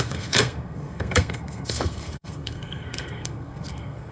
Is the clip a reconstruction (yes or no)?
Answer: yes